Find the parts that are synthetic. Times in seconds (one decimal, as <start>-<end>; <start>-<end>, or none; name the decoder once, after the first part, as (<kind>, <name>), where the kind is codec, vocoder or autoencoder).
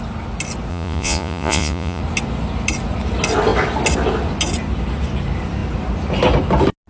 0.7-2.0 (vocoder, Vocos)